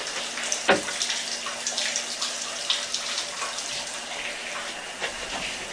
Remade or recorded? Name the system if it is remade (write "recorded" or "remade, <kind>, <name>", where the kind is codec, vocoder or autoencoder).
recorded